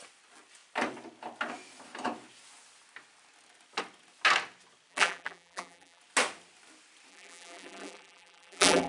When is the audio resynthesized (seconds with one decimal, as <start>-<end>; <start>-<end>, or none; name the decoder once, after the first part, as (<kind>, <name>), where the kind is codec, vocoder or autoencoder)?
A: 4.9-6.0 (vocoder, BigVGAN v2); 7.1-8.9